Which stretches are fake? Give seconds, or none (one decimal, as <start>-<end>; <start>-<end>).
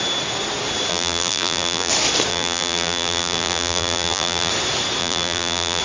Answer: 0.9-1.9; 2.3-4.5; 5.0-5.8